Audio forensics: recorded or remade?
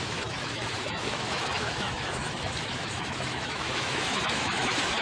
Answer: remade